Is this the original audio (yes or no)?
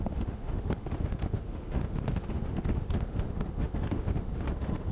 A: no